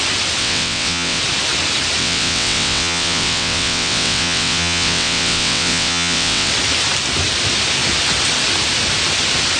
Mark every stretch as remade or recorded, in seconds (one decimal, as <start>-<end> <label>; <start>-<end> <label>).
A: 0.0-0.4 recorded; 0.4-1.2 remade; 1.2-2.0 recorded; 2.0-6.5 remade; 6.5-9.6 recorded